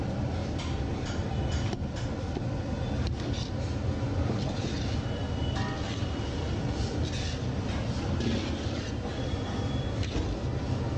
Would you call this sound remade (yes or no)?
no